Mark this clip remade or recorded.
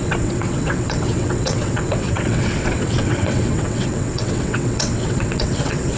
remade